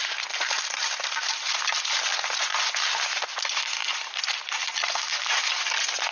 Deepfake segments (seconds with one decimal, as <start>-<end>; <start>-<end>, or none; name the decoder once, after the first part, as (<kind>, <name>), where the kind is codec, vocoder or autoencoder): none

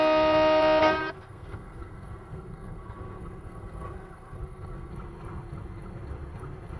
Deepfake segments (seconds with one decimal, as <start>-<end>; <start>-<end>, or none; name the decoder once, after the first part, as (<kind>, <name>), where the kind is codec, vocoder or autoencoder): 0.8-4.9 (codec, SNAC)

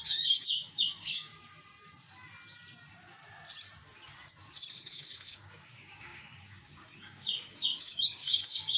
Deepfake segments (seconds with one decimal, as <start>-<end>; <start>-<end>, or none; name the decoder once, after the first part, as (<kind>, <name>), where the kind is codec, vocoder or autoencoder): 0.0-1.3 (codec, DAC); 4.7-8.8

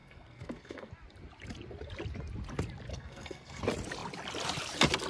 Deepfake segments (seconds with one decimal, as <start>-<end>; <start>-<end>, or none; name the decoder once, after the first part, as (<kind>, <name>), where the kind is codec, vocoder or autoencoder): 0.0-0.9 (codec, SNAC); 2.9-3.6

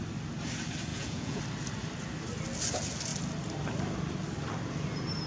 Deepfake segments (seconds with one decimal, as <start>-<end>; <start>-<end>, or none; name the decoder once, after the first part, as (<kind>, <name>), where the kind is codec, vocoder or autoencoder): 0.9-1.4 (vocoder, Vocos)